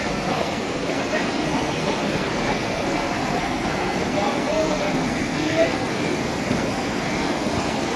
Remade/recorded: remade